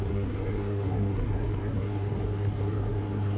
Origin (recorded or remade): remade